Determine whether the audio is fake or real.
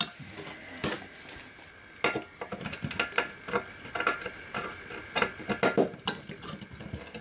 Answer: real